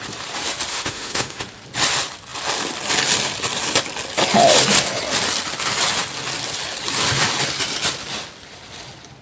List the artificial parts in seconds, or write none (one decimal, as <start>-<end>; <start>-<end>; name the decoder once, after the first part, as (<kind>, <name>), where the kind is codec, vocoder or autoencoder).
0.7-1.4 (autoencoder, DAC-VAE)